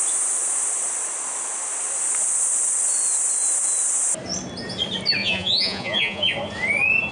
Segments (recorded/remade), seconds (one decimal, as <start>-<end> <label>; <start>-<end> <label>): 0.0-5.2 recorded; 5.2-6.3 remade; 6.3-7.1 recorded